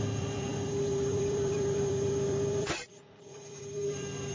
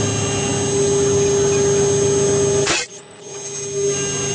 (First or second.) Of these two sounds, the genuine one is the second